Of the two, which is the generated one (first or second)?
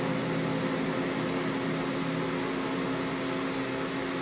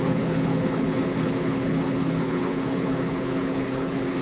second